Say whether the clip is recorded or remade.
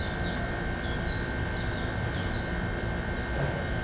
recorded